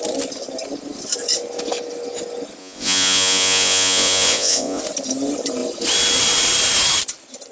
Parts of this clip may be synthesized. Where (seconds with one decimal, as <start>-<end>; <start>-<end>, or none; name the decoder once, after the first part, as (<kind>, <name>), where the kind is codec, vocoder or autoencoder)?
2.6-4.8 (vocoder, Vocos)